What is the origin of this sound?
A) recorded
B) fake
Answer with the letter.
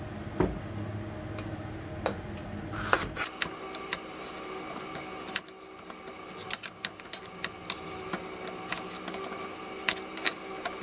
A